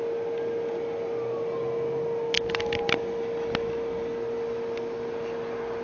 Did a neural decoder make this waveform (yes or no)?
no